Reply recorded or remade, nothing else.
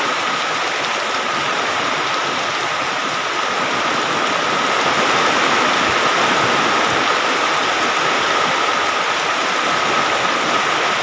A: recorded